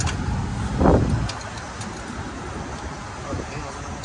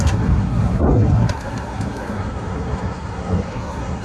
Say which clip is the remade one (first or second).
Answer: second